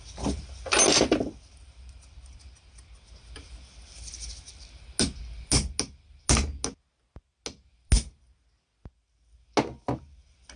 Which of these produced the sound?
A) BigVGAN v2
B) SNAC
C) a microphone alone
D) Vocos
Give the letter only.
C